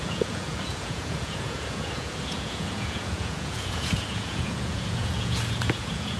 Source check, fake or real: fake